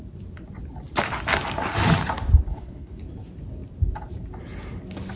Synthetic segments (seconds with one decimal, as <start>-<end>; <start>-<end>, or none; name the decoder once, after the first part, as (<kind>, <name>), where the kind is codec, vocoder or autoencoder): 2.5-3.0 (codec, HILCodec)